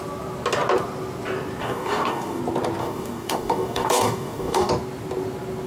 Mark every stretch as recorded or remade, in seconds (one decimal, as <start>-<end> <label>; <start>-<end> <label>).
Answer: 0.0-1.6 recorded; 1.6-2.4 remade; 2.4-2.8 recorded; 2.8-4.7 remade; 4.7-5.7 recorded